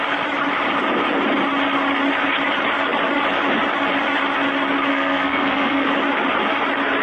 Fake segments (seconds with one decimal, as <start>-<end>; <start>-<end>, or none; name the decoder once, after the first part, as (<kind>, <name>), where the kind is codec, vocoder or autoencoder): 4.9-5.9 (codec, SNAC)